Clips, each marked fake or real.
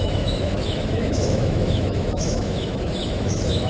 fake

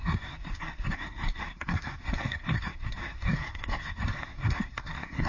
fake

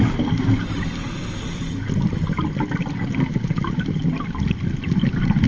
real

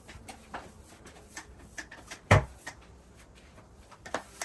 real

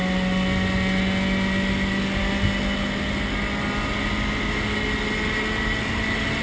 real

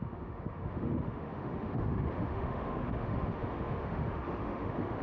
fake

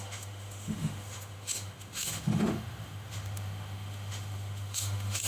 fake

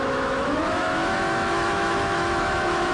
fake